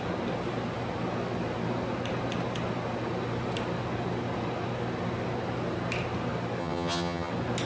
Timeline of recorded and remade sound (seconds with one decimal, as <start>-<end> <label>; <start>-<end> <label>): 0.0-6.6 recorded; 6.6-7.3 remade; 7.3-7.7 recorded